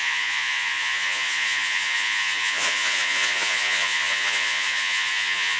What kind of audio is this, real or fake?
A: fake